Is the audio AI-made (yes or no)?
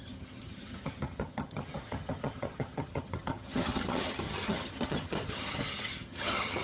yes